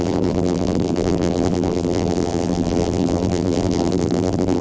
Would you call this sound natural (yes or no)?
no